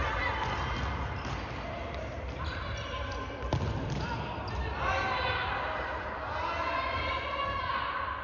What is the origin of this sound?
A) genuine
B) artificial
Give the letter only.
A